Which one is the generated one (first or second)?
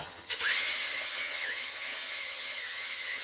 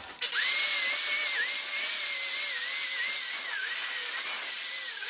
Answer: first